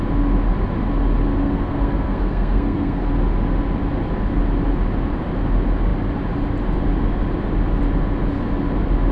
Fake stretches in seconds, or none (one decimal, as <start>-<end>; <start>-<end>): 1.4-3.1